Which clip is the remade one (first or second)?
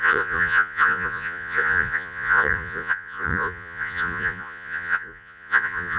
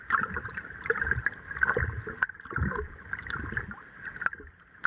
first